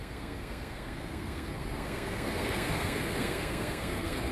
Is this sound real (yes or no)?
no